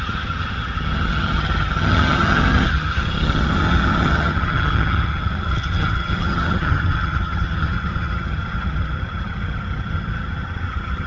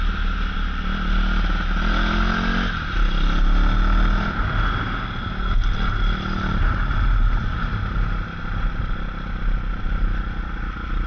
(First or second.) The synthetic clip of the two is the first